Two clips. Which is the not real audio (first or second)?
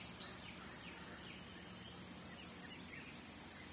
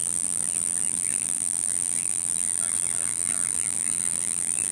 second